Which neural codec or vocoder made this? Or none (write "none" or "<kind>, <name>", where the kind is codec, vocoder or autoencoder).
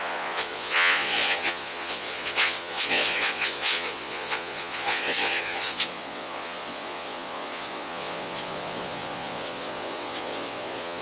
vocoder, Vocos